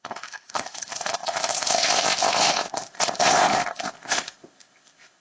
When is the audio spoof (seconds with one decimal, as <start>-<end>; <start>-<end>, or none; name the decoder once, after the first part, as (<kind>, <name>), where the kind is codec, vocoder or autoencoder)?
0.0-5.2 (codec, ZipCodec)